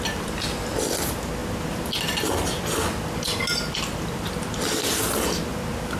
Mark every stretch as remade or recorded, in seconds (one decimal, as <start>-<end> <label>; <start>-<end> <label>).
0.0-6.0 recorded